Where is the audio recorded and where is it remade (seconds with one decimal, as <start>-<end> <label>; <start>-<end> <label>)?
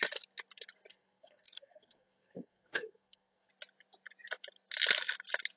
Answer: 0.0-0.9 recorded; 0.9-3.5 remade; 3.5-5.6 recorded